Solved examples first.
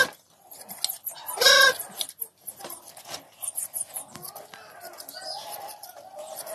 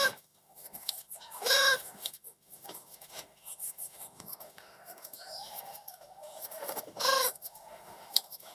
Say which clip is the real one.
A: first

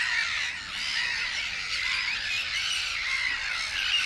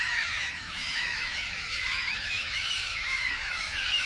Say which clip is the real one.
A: first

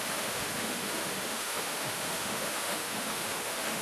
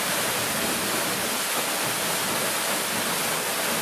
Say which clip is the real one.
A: second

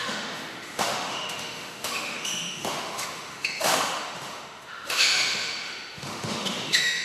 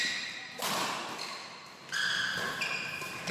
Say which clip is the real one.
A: second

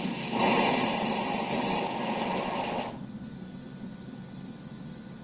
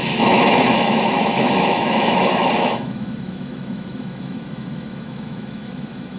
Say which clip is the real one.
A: first